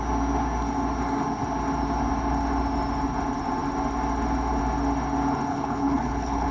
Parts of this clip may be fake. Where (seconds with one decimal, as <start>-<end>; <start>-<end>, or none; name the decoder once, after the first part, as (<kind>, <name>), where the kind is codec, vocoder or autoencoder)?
5.5-6.5 (codec, HILCodec)